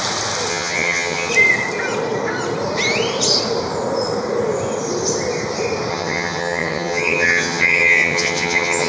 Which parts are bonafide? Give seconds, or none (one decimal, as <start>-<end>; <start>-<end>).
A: 0.0-0.5; 1.3-5.9